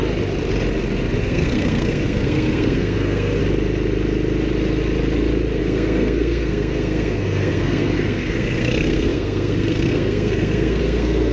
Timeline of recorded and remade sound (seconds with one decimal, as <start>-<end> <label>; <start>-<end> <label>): 0.0-1.2 recorded; 1.2-3.4 remade; 3.4-5.6 recorded; 5.6-11.3 remade